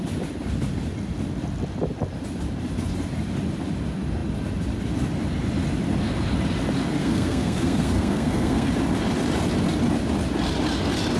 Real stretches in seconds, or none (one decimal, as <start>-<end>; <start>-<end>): 0.0-7.0; 8.7-11.2